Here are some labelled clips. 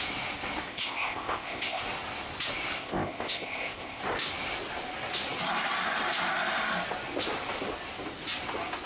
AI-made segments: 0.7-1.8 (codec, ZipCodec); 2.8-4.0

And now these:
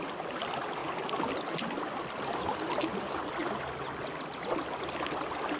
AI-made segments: none

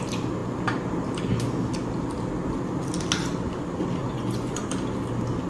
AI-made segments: 4.0-4.7 (vocoder, Vocos)

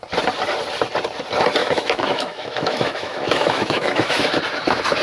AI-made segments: 1.6-4.4 (autoencoder, DAC-VAE)

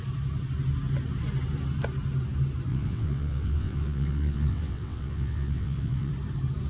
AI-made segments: 2.7-6.1 (vocoder, WaveNeXt)

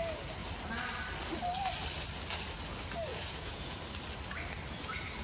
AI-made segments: 3.1-3.8 (vocoder, Vocos)

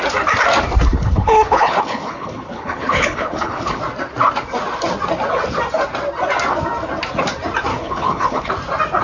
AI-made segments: 0.9-3.8 (codec, HILCodec); 7.7-8.5